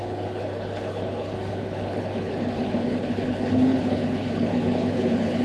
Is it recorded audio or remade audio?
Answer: remade